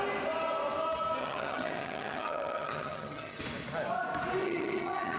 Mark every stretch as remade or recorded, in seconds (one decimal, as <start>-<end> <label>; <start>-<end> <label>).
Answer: 0.0-1.2 recorded; 1.2-3.4 remade; 3.4-4.4 recorded; 4.4-5.2 remade